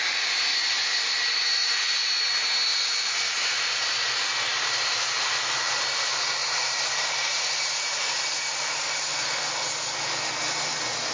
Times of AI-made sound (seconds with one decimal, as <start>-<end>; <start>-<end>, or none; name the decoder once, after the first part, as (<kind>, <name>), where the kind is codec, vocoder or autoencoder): 0.5-2.1 (vocoder, BigVGAN v2); 6.4-9.1